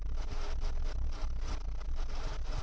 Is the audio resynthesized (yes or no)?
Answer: no